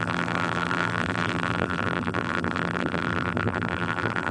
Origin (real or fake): fake